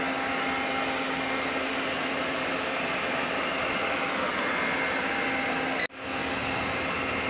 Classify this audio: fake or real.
real